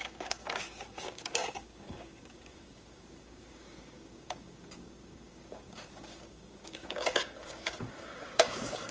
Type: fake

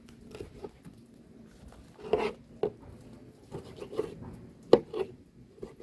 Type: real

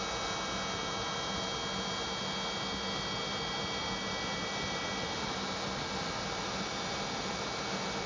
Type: real